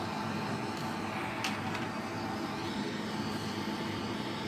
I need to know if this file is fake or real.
real